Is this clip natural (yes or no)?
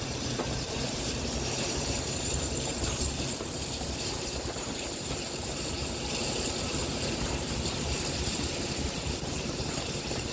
no